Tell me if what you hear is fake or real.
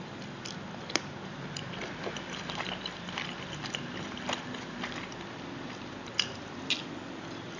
fake